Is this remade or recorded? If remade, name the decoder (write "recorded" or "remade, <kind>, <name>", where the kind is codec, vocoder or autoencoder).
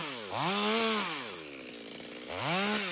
recorded